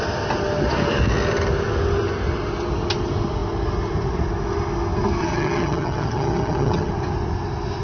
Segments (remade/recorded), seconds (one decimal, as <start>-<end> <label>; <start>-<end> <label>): 0.0-5.2 recorded; 5.2-6.9 remade; 6.9-7.8 recorded